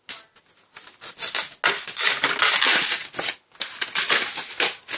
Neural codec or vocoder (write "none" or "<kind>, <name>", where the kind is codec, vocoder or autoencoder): none